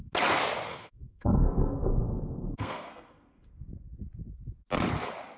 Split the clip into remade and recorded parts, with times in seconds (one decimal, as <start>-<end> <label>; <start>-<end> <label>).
0.0-0.7 recorded; 0.7-3.5 remade; 3.5-5.4 recorded